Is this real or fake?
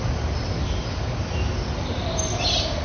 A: real